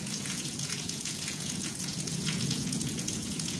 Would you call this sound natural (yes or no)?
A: no